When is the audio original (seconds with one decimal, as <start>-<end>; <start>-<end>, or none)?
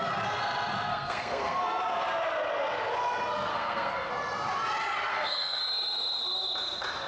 0.0-0.9; 1.8-3.5; 4.1-5.1; 5.6-7.1